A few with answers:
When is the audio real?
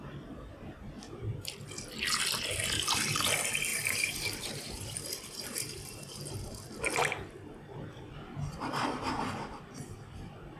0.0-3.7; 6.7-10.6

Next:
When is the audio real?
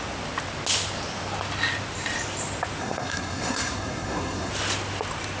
0.0-2.8; 4.5-5.4